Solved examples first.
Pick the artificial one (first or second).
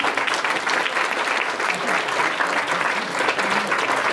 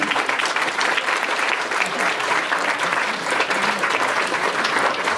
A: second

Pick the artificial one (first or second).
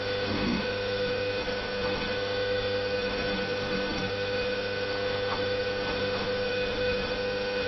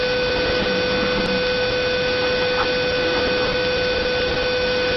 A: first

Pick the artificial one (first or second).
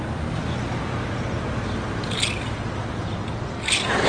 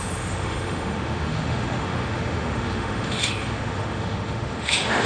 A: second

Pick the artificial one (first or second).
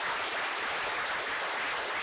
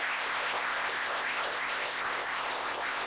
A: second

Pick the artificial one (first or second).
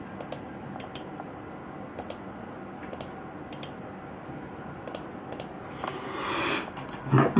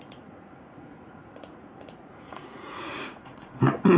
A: second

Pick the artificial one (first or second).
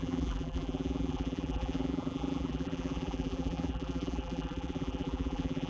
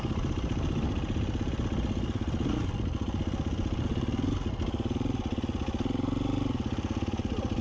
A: first